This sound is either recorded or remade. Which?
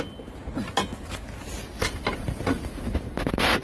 recorded